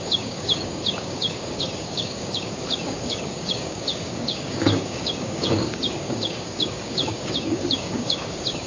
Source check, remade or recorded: remade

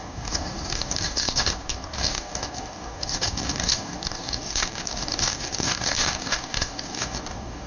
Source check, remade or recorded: remade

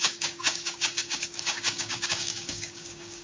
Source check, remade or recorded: remade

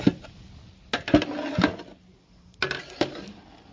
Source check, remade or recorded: recorded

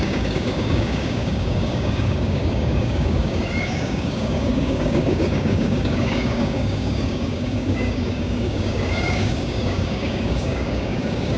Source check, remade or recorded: remade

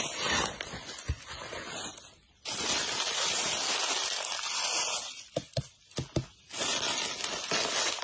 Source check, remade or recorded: recorded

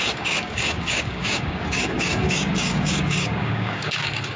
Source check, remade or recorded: remade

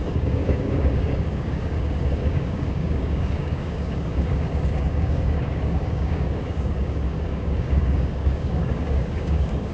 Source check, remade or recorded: remade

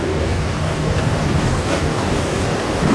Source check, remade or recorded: remade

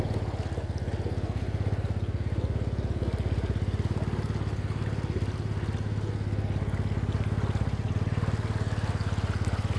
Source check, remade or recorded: recorded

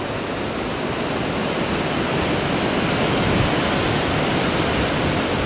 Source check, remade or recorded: recorded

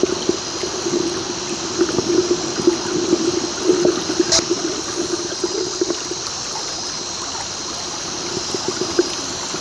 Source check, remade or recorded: recorded